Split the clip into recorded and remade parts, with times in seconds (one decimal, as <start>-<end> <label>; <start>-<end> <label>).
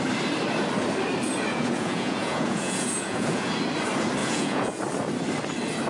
0.0-1.5 recorded; 1.5-3.5 remade; 3.5-4.2 recorded; 4.2-4.8 remade; 4.8-5.9 recorded